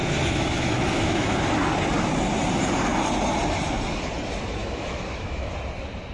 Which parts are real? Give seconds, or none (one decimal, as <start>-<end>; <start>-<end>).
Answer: 1.5-4.6; 5.5-6.1